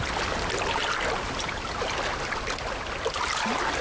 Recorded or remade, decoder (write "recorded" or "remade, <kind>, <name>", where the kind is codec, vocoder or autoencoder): recorded